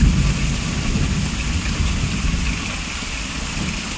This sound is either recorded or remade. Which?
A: recorded